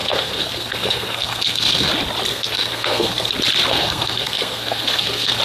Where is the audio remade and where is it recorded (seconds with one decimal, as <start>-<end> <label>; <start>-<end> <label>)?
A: 0.0-1.9 remade; 1.9-2.3 recorded; 2.3-3.3 remade; 3.3-3.7 recorded; 3.7-5.4 remade